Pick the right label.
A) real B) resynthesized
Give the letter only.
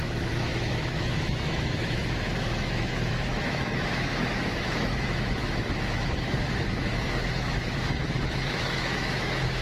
B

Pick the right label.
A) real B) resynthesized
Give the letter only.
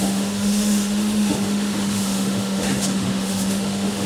B